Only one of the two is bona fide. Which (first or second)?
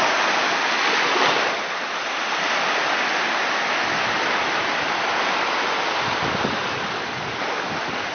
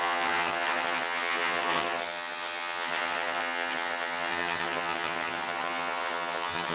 first